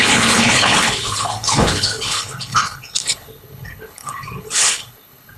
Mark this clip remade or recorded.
remade